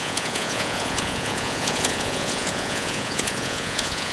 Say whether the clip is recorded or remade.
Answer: remade